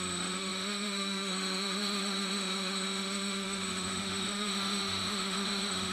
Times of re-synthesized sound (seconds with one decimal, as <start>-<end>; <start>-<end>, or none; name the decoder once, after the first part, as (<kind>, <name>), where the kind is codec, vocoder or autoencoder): 0.0-5.9 (autoencoder, DAC-VAE)